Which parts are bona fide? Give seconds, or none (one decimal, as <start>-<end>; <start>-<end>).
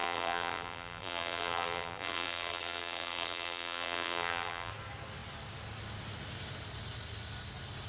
4.7-7.9